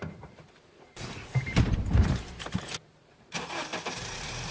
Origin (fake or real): fake